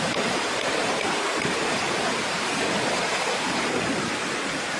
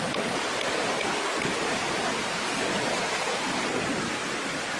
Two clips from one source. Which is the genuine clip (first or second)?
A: second